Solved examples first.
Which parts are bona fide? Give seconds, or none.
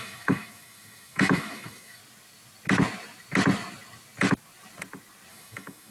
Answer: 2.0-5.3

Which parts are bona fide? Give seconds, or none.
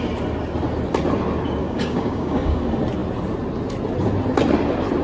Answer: 0.0-1.6; 2.6-5.0